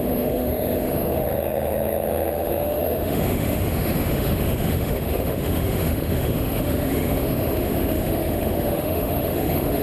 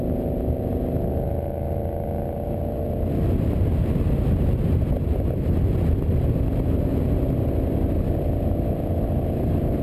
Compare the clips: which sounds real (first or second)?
second